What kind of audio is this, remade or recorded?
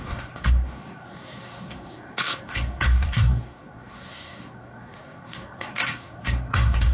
remade